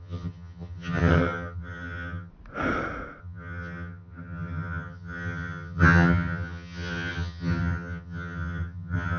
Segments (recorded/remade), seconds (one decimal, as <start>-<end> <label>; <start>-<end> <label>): 0.0-2.3 remade; 2.3-3.2 recorded; 3.2-9.2 remade